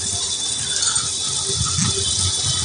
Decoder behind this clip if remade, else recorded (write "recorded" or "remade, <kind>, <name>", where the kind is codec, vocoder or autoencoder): recorded